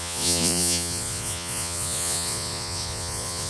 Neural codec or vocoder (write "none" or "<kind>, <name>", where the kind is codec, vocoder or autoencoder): vocoder, Vocos